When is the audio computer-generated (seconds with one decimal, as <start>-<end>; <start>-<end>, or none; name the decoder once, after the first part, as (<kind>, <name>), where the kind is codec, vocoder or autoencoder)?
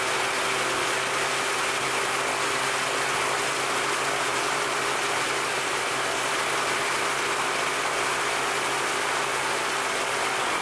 4.3-5.0 (vocoder, BigVGAN v2)